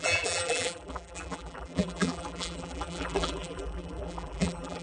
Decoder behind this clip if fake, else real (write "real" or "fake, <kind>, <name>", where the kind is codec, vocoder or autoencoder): fake, vocoder, BigVGAN v2